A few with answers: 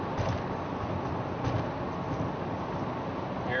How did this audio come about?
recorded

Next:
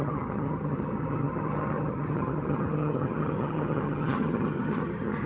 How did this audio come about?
remade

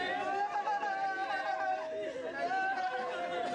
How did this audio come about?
recorded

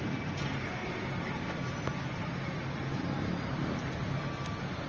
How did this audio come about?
recorded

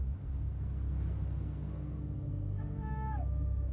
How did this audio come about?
remade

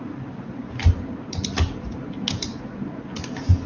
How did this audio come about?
recorded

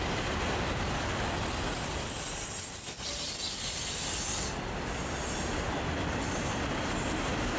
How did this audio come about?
recorded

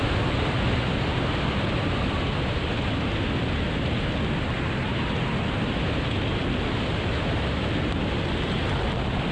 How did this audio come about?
recorded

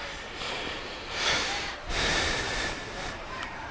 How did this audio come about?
remade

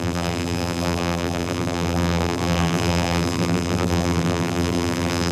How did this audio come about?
remade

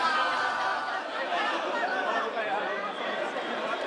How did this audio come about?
remade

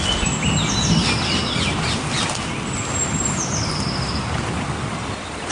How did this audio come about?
recorded